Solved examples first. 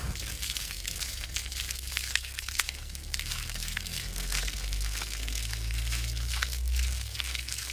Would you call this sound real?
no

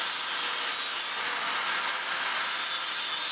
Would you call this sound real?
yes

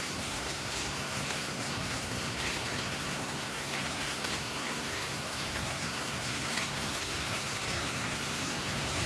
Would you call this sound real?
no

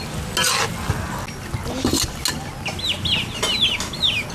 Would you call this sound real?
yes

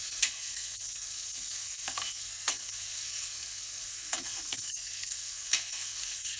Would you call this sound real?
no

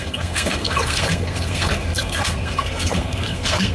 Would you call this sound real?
no